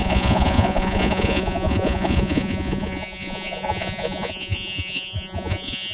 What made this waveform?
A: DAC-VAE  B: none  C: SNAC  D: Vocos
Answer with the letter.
D